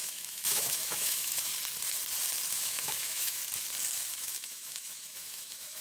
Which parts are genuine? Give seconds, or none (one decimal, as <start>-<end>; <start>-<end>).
1.5-2.5; 3.4-4.1